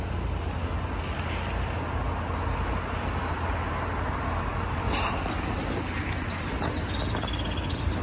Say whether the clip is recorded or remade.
recorded